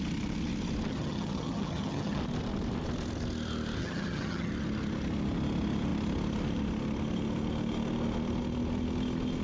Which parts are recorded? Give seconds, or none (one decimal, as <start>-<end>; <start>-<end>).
0.0-0.9; 2.2-3.8; 4.5-9.4